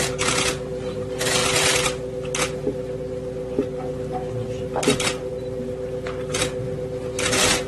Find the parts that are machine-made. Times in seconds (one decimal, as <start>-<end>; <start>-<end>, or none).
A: none